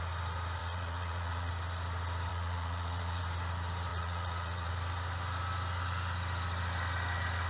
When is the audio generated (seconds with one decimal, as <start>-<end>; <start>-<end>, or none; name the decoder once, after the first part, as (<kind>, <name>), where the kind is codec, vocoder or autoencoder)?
0.6-1.5 (vocoder, Vocos); 2.3-3.2; 3.9-4.7